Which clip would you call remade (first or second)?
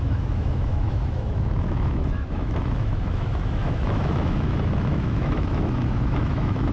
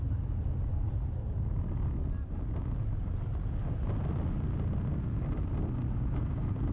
first